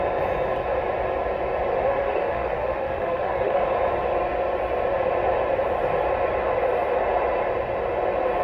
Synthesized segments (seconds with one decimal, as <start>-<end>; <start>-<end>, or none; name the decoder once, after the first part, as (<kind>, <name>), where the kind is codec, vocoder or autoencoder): 1.7-3.7 (autoencoder, DAC-VAE)